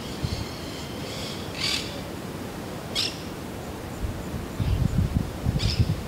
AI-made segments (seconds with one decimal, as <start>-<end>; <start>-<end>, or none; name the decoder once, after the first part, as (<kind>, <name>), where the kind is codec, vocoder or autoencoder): 1.0-3.0 (vocoder, BigVGAN v2); 4.8-6.1